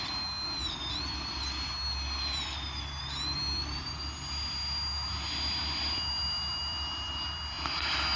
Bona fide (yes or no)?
yes